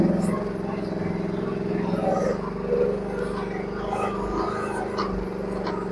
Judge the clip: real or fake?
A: real